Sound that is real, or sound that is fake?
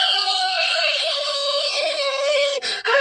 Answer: fake